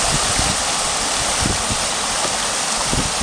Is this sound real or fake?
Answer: real